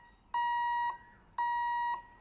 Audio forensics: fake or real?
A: real